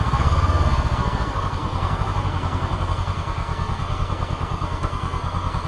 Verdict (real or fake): fake